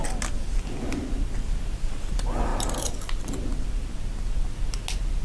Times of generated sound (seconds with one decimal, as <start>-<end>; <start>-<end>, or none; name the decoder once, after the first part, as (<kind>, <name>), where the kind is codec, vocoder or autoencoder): none